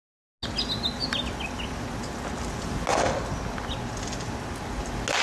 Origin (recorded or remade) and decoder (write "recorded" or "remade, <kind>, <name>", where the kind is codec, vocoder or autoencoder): recorded